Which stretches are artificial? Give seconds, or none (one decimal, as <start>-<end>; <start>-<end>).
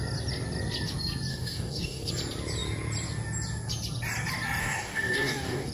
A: 1.3-2.1; 4.6-5.7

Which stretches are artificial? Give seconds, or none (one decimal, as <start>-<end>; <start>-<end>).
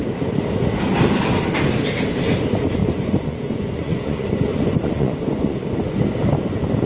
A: 2.8-6.0